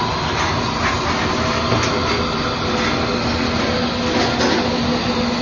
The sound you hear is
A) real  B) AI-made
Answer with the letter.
A